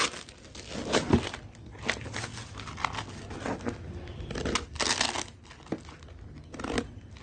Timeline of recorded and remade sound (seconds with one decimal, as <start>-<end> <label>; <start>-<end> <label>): 0.0-7.2 recorded